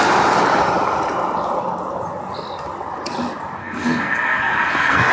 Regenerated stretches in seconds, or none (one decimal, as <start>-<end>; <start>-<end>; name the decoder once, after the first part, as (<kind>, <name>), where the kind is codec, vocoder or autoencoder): 3.6-5.1 (codec, SNAC)